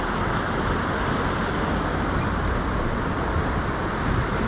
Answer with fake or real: real